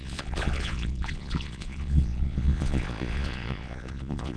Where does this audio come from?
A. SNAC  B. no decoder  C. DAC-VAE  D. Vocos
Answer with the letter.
D